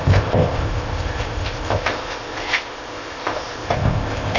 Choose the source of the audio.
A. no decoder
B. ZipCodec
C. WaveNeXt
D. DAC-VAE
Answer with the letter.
B